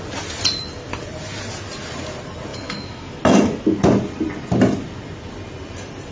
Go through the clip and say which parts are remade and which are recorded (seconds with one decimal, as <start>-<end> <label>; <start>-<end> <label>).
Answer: 0.0-2.5 recorded; 2.5-3.2 remade; 3.2-6.1 recorded